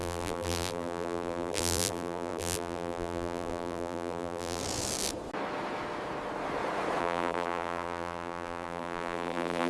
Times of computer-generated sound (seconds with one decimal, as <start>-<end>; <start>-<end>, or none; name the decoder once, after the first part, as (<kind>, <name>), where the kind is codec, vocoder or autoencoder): 0.0-4.6 (vocoder, BigVGAN v2); 7.0-9.7